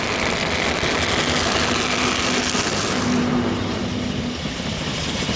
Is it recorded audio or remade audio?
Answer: recorded